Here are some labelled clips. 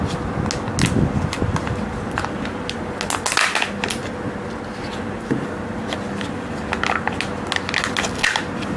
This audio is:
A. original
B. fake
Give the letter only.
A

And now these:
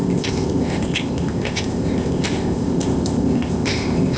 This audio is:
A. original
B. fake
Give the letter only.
B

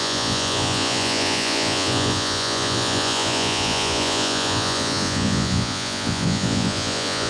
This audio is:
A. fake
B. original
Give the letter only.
A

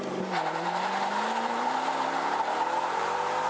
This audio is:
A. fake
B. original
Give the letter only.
A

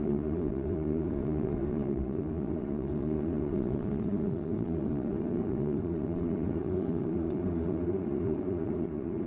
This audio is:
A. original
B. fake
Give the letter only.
B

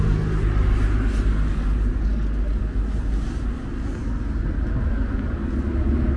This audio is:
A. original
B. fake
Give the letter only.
A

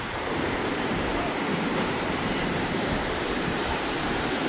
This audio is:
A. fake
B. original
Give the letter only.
A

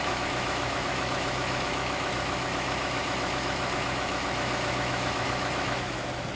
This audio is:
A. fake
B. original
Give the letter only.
A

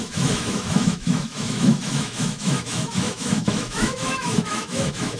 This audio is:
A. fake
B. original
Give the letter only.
A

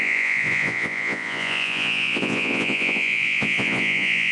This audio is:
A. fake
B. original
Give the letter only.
A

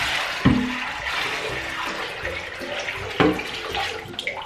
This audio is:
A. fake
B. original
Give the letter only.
B